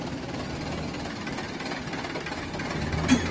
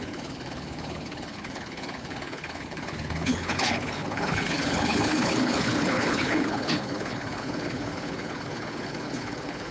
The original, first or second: first